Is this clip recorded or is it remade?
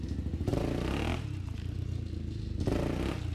recorded